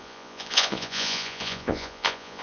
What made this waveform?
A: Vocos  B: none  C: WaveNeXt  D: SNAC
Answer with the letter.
A